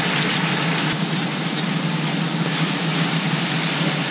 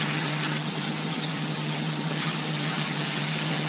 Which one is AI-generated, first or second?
second